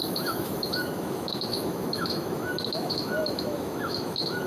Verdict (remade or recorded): remade